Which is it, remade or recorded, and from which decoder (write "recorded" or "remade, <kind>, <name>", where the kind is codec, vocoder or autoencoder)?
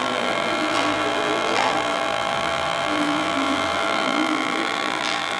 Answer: remade, vocoder, BigVGAN v2